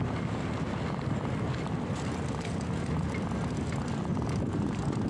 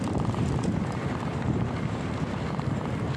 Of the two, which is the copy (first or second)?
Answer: second